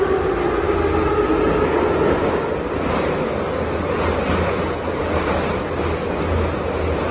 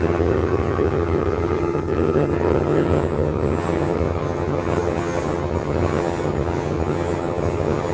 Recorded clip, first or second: first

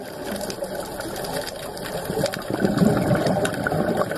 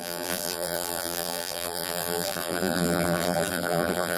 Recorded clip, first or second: first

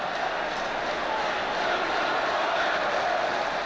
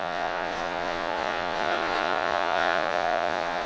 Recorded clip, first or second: first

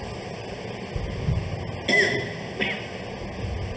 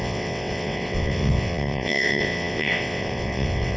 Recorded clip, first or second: first